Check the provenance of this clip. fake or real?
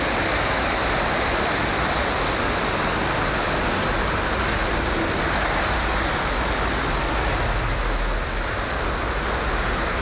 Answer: real